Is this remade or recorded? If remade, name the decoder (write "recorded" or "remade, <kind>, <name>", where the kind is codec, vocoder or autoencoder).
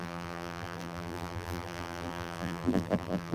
remade, vocoder, BigVGAN v2